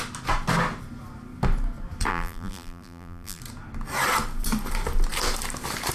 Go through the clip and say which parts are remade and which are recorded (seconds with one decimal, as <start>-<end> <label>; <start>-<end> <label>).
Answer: 0.0-2.1 recorded; 2.1-3.4 remade; 3.4-5.9 recorded